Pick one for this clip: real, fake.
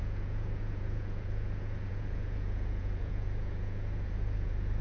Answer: fake